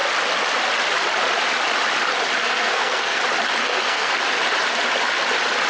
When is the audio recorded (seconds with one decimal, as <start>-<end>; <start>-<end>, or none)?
0.0-2.4; 3.2-3.6; 4.1-5.7